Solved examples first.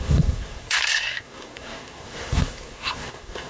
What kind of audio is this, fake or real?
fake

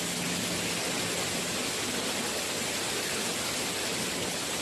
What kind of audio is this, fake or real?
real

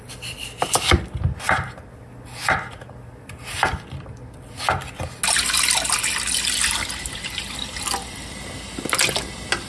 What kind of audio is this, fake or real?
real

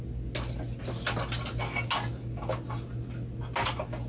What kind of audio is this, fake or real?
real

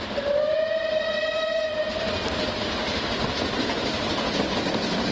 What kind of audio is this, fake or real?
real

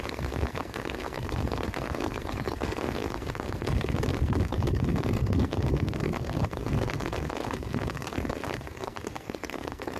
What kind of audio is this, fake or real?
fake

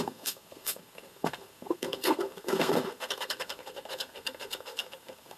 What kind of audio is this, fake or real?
fake